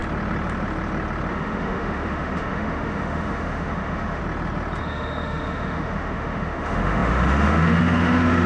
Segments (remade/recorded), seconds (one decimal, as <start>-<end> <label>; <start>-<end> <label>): 0.0-1.3 recorded; 1.3-4.2 remade; 4.2-4.8 recorded; 4.8-8.5 remade